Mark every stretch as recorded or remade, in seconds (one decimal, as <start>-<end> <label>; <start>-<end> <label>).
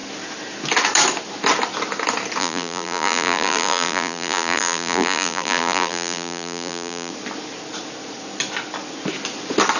0.0-2.4 recorded; 2.4-7.1 remade; 7.1-9.8 recorded